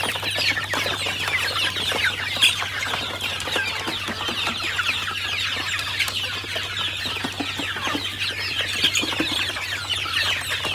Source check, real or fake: real